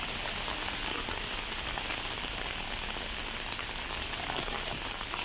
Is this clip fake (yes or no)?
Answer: no